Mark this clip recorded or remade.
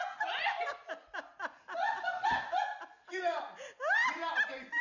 recorded